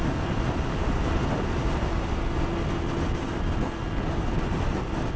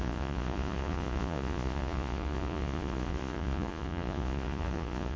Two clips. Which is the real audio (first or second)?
first